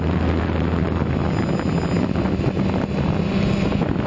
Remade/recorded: recorded